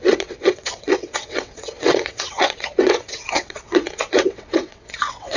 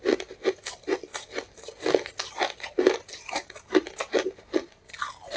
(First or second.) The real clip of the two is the second